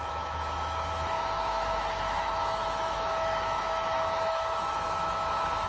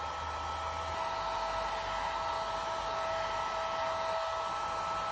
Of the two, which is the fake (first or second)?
first